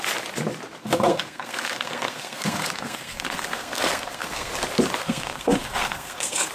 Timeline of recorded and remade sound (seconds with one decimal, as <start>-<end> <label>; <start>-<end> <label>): 0.0-0.8 recorded; 0.8-4.5 remade; 4.5-5.0 recorded; 5.0-6.5 remade